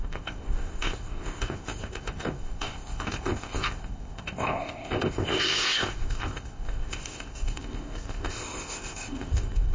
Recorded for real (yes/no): no